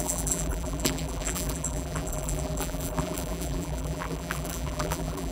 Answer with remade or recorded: remade